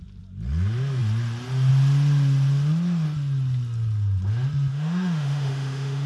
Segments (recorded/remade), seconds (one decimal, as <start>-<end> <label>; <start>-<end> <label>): 0.0-4.7 recorded; 4.7-6.1 remade